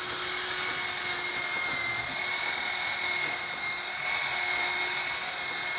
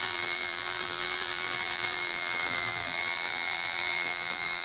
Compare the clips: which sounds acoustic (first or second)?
first